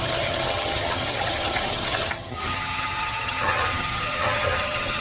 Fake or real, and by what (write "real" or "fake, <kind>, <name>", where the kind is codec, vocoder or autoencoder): fake, vocoder, HiFi-GAN